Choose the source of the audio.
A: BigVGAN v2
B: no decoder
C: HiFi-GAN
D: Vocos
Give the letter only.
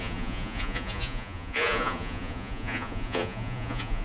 D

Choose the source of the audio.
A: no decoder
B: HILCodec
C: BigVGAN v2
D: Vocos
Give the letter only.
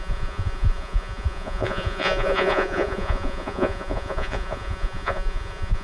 D